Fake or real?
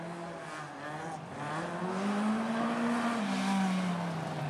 real